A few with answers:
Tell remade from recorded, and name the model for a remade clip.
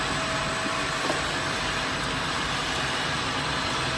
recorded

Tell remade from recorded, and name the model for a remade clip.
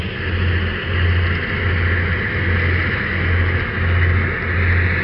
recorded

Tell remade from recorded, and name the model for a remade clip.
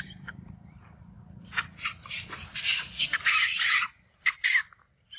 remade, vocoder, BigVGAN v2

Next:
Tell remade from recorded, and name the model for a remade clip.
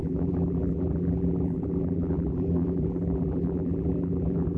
remade, vocoder, BigVGAN v2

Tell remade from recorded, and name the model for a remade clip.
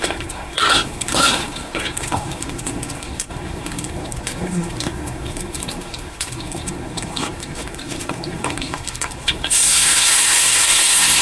remade, codec, SNAC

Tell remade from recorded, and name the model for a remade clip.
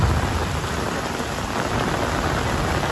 recorded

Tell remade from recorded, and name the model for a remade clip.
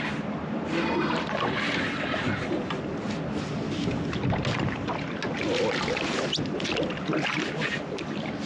recorded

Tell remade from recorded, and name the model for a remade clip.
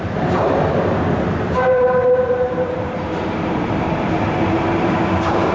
remade, vocoder, BigVGAN v2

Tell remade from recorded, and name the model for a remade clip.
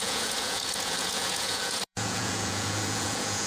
remade, vocoder, Vocos